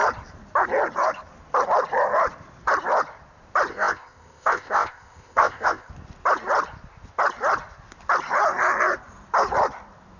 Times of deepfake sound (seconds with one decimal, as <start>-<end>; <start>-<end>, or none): 3.7-5.9